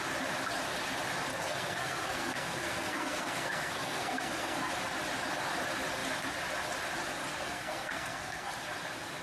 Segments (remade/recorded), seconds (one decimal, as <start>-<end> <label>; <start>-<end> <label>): 0.0-1.3 recorded; 1.3-4.7 remade; 4.7-7.3 recorded; 7.3-8.5 remade; 8.5-9.2 recorded